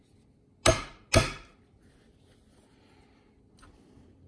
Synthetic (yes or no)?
no